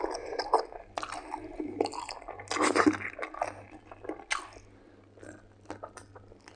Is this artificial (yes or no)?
no